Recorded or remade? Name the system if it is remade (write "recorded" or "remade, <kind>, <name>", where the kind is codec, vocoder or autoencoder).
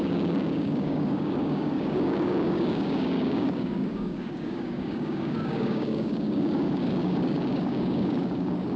remade, codec, DAC